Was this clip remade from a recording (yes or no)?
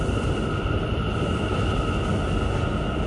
no